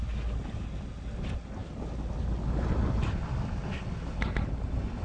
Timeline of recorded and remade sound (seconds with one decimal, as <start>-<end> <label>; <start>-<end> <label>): 0.0-5.0 recorded